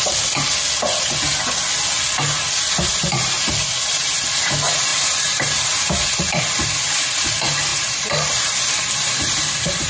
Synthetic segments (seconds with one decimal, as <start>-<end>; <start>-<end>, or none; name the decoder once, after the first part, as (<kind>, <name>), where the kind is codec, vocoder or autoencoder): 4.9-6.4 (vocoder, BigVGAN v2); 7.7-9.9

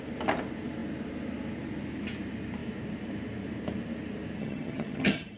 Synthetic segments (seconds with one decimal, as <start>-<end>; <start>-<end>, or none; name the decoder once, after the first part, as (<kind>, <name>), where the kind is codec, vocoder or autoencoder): 4.4-5.4 (vocoder, HiFi-GAN)

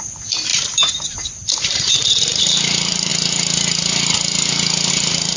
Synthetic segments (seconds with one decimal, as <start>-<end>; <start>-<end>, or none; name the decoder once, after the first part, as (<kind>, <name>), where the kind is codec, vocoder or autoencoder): 0.0-3.1 (vocoder, BigVGAN v2); 4.9-5.4